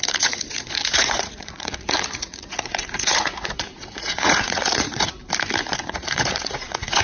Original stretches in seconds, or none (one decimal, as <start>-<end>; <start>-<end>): 5.2-5.7